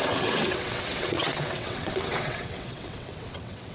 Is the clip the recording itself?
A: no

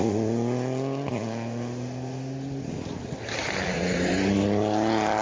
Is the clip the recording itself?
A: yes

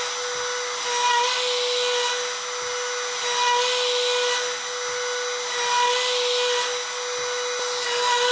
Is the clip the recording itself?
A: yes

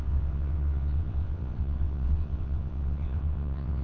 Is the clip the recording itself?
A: no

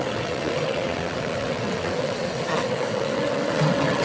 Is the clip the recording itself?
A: no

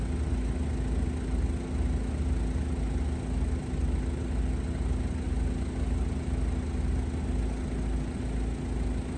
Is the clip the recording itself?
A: yes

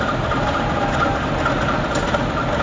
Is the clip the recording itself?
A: yes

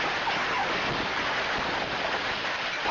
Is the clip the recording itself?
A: yes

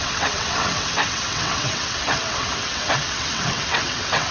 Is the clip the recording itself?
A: no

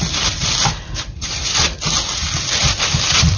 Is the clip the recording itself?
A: yes